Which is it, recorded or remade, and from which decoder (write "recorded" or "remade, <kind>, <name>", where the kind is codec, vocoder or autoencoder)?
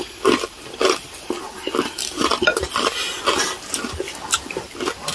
recorded